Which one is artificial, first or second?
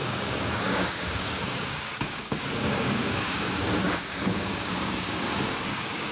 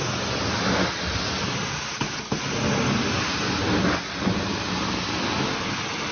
first